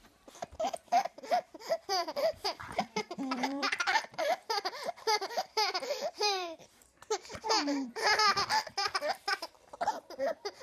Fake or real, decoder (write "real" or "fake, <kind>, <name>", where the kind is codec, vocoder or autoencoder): fake, vocoder, BigVGAN v2